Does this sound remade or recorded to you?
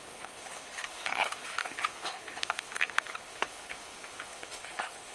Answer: remade